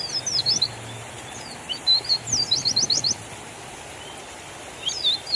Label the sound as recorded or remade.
recorded